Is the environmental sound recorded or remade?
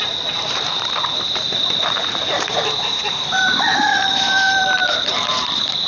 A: remade